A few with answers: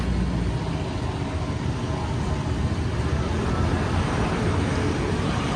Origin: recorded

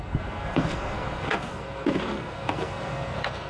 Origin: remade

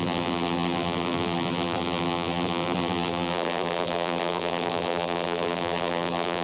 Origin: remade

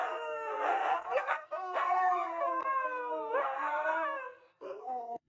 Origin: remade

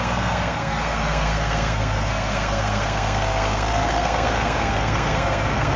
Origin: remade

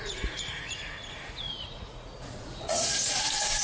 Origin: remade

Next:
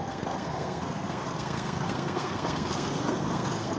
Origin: remade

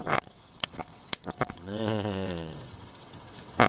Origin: remade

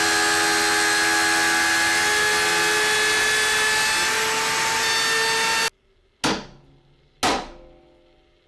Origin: recorded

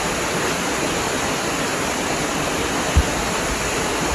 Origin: recorded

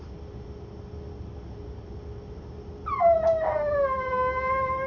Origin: recorded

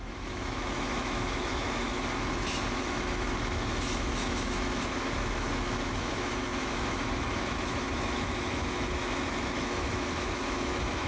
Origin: remade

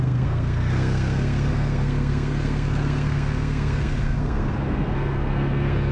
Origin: remade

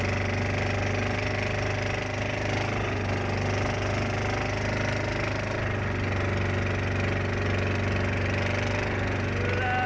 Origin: recorded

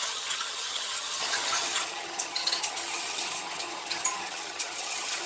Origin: remade